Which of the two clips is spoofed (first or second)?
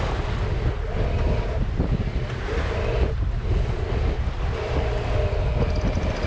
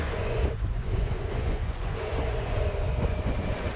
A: second